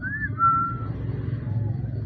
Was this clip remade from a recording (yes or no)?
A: no